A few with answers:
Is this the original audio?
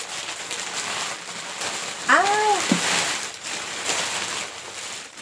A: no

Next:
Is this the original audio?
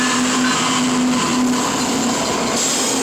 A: yes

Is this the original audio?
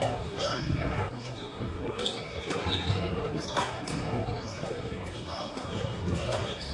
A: no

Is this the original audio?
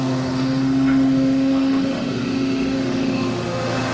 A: no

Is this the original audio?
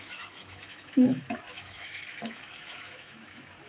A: no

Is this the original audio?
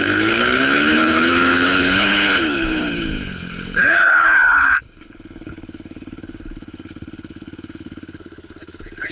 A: no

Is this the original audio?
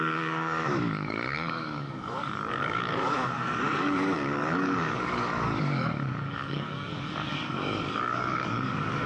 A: no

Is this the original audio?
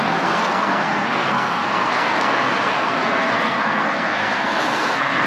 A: no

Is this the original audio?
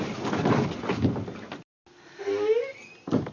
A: yes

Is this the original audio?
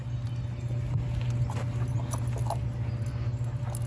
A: yes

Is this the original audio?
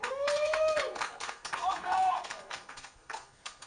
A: no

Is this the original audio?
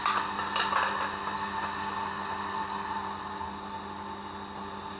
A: yes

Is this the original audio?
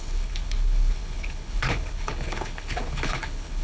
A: no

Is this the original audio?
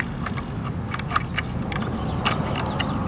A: yes